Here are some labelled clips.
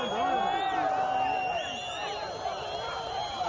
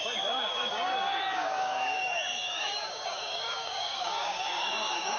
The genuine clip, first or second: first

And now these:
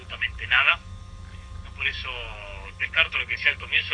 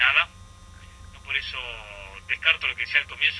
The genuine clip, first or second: second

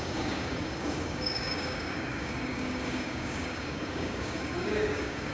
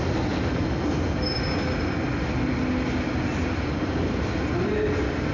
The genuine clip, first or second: second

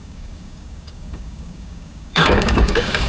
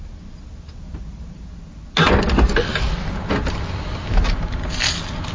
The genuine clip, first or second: second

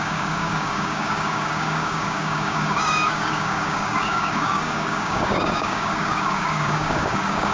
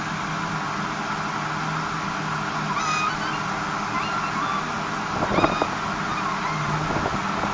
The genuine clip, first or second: second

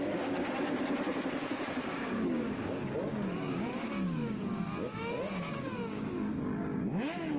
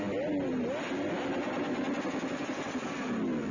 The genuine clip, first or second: second